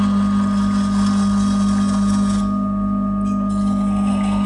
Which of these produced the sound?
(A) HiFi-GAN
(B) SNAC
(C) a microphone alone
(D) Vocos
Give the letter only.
C